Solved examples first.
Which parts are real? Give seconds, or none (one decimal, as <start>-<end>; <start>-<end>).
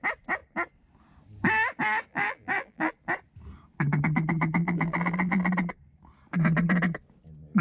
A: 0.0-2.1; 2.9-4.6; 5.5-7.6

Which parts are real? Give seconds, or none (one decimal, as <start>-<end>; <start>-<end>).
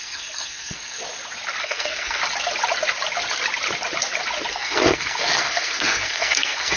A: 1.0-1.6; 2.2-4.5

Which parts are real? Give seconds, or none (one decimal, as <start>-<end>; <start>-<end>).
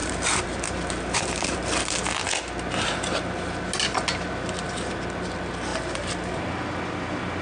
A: 1.7-7.4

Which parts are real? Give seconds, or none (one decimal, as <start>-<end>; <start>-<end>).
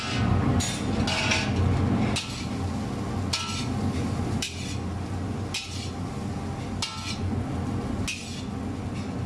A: 0.0-9.3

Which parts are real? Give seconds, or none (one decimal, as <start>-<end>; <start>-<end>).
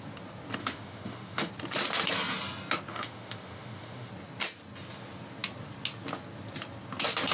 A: 0.0-0.6; 1.5-2.9; 4.1-7.3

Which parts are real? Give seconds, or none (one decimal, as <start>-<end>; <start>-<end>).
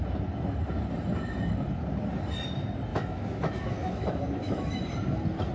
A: 0.0-2.9; 4.8-5.5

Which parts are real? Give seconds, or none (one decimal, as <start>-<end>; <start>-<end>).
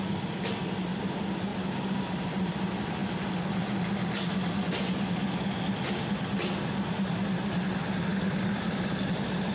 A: 0.0-1.5; 2.5-8.1; 9.1-9.5